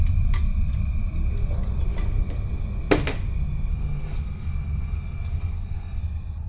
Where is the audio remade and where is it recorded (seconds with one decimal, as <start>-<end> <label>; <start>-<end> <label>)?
0.0-3.7 recorded; 3.7-6.0 remade; 6.0-6.5 recorded